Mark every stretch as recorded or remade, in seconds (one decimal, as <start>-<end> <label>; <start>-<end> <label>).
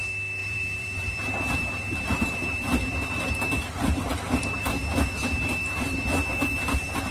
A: 0.0-0.4 recorded; 0.4-4.7 remade; 4.7-7.1 recorded